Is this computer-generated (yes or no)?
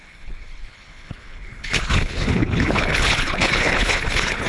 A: yes